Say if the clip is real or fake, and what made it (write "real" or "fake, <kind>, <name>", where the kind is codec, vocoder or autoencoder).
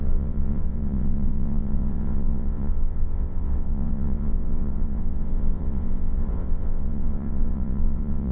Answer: fake, vocoder, WaveNeXt